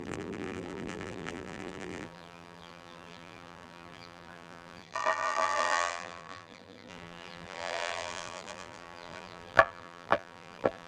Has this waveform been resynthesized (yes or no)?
yes